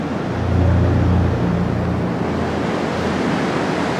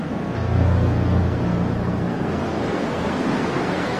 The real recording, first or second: first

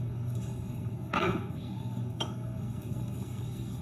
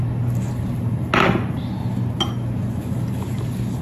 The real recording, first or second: second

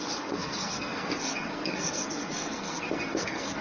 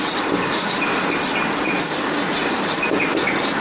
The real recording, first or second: second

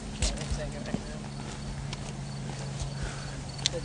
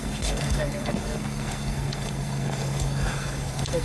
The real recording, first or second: first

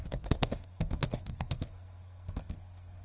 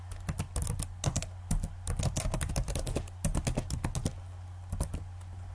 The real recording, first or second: second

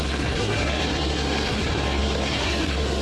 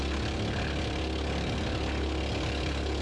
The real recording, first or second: second